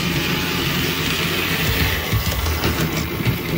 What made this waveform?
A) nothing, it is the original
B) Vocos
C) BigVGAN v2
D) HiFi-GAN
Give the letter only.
A